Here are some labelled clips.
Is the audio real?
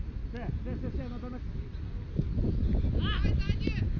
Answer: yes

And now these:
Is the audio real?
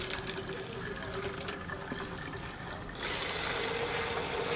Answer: yes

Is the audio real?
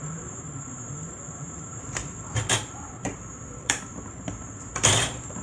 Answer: no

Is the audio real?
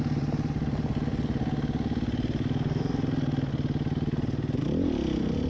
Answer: yes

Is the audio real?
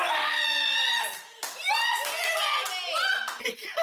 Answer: yes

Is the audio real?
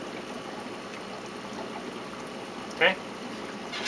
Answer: yes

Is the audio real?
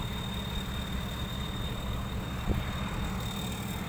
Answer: yes